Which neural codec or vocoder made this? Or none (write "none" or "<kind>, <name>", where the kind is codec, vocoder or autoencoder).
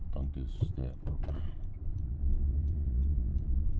vocoder, Vocos